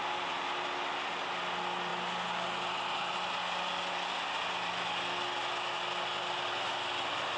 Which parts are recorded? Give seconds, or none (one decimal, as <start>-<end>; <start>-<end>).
0.0-7.4